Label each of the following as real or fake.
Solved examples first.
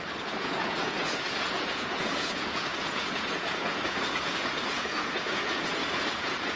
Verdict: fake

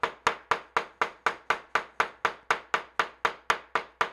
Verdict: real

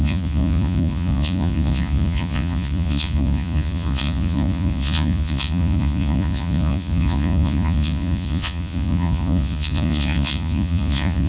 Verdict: fake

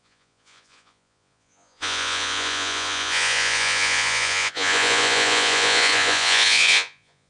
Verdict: fake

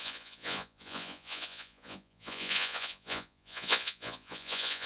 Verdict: fake